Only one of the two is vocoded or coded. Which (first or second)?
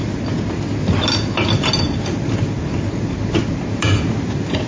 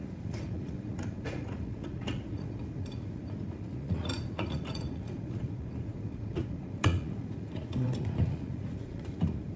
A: second